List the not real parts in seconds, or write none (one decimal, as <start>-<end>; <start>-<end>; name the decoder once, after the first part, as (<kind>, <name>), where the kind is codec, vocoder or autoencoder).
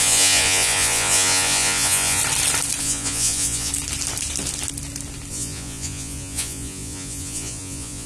0.0-2.2 (vocoder, Vocos); 2.8-3.7; 5.3-8.1